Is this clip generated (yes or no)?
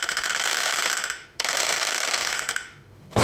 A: yes